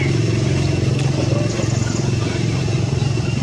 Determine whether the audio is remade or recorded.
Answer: recorded